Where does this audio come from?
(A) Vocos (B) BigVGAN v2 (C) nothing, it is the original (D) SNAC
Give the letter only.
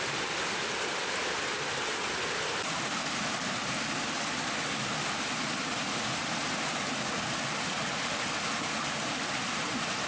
C